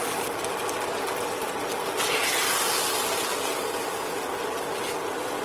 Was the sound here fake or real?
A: real